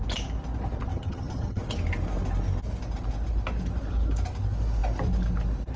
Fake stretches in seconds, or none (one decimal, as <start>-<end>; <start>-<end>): 0.9-1.6